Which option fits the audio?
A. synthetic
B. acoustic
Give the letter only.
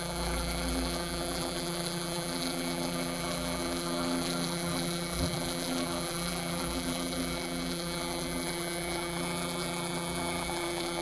A